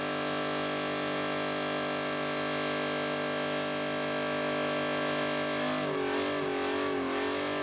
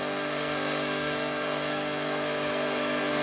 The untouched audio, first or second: first